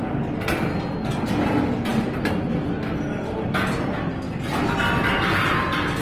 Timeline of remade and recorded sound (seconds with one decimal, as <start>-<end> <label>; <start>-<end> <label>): 0.0-6.0 recorded